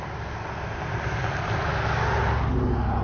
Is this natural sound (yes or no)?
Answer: yes